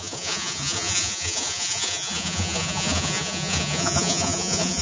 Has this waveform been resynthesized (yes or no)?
yes